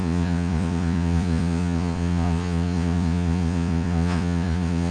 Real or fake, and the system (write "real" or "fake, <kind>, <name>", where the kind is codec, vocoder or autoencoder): fake, vocoder, Vocos